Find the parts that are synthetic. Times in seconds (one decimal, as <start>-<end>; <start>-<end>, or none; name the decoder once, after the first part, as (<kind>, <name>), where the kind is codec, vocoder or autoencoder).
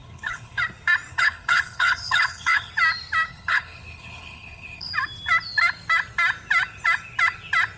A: 0.0-0.6 (codec, HILCodec); 1.1-2.7; 3.3-4.9